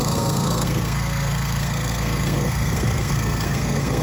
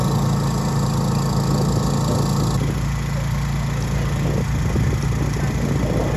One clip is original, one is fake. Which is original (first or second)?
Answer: second